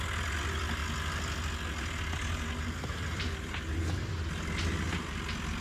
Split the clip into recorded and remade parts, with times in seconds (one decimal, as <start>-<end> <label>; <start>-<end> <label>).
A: 0.0-5.6 recorded